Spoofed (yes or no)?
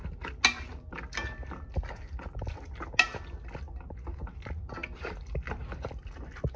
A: no